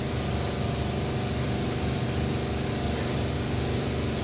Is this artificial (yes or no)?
no